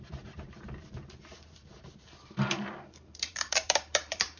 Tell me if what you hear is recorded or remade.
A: remade